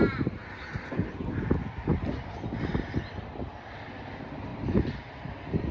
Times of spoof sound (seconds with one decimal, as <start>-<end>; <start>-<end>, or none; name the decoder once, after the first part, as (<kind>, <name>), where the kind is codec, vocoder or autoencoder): none